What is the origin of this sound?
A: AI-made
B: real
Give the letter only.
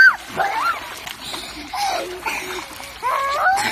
B